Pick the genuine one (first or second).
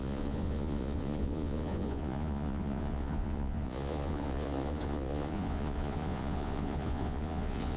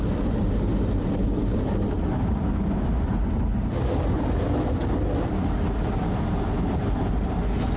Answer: second